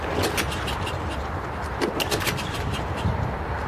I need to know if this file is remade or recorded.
recorded